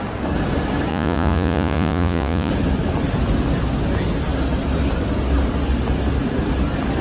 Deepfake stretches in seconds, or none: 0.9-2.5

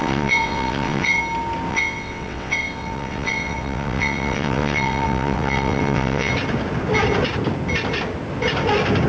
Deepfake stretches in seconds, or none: 0.0-1.2; 1.7-6.3